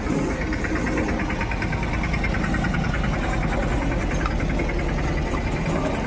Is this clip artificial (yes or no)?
no